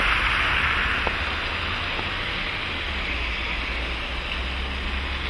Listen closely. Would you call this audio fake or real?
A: real